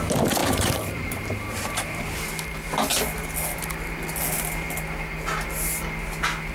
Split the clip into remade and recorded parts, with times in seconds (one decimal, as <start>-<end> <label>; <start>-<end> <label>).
0.0-0.4 recorded; 0.4-2.2 remade; 2.2-6.5 recorded